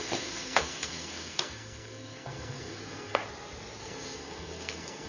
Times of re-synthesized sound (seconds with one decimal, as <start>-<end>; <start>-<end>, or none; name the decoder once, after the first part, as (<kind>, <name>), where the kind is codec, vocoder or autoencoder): 0.0-3.2 (codec, SNAC); 3.8-5.1